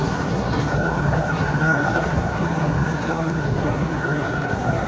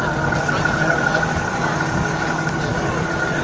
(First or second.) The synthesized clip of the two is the first